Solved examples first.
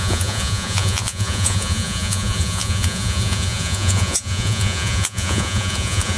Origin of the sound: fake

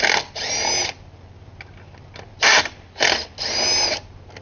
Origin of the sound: real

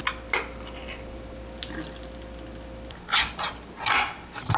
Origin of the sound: real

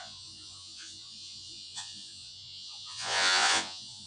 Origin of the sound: fake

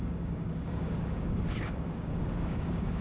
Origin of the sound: fake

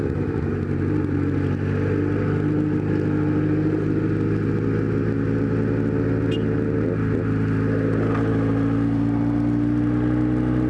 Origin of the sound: real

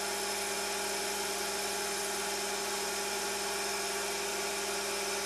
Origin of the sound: real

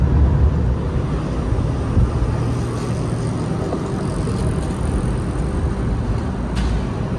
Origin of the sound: real